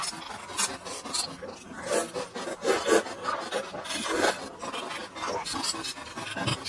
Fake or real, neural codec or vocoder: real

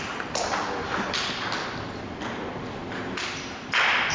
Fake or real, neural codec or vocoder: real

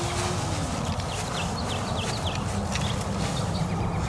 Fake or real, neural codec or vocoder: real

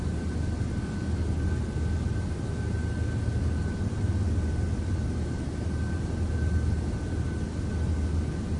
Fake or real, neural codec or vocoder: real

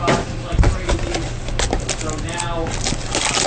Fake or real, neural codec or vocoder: real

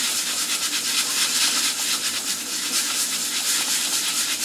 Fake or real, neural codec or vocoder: real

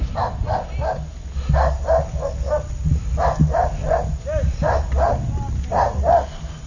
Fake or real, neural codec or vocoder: real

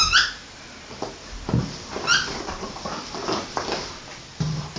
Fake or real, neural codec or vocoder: real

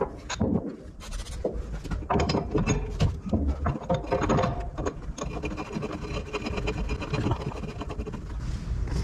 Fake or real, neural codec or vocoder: real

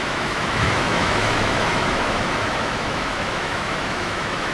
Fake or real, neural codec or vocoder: fake, autoencoder, DAC-VAE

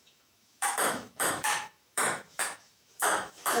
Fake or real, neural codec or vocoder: fake, autoencoder, DAC-VAE